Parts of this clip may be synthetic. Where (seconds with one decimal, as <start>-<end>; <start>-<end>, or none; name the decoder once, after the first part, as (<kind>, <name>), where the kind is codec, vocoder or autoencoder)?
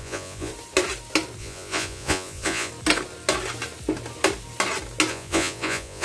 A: 0.0-0.5 (vocoder, Vocos); 1.4-2.7; 5.1-6.0